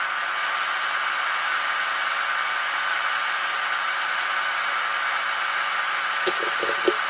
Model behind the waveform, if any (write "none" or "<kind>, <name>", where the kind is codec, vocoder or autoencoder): none